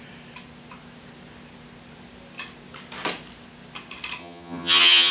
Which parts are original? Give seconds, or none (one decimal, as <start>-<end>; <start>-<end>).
0.0-4.2